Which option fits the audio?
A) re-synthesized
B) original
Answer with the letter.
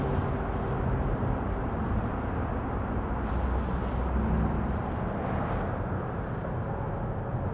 B